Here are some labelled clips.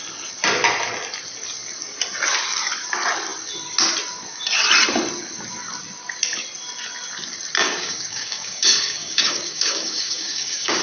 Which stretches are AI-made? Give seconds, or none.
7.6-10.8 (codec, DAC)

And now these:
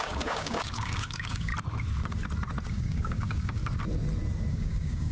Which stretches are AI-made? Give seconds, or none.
0.0-1.5 (codec, DAC); 2.7-3.6; 4.5-5.1

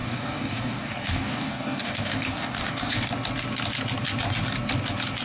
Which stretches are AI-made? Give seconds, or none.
0.0-3.1 (codec, DAC)

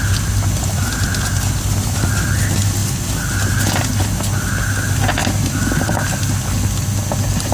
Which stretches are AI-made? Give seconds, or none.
none

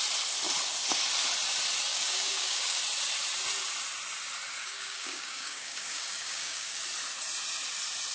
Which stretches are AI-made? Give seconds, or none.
1.9-2.8 (codec, DAC); 4.6-6.8

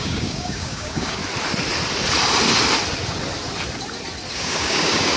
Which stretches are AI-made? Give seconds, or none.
0.0-1.2 (codec, DAC); 4.3-5.2

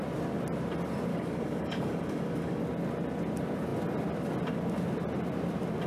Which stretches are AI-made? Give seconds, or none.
1.1-2.6 (codec, DAC)

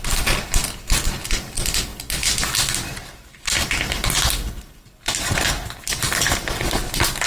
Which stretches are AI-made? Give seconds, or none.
none